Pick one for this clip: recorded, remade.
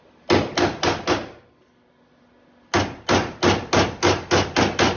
recorded